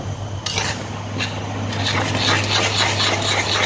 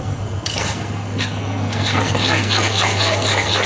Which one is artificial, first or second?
second